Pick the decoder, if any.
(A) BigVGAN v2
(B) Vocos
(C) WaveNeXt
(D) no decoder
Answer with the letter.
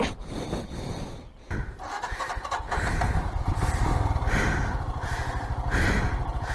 A